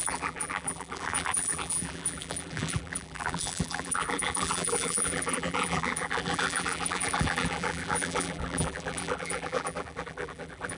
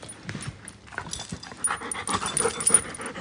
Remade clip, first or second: first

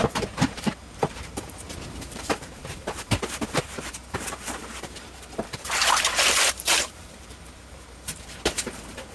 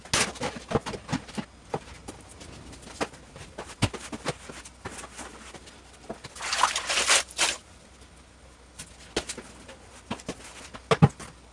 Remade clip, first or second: first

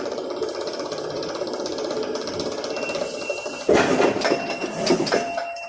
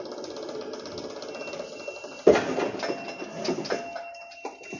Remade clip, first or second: first